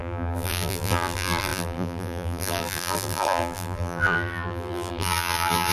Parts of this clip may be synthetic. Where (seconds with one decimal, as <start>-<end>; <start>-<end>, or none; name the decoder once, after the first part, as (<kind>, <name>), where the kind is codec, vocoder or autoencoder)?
0.0-5.7 (vocoder, BigVGAN v2)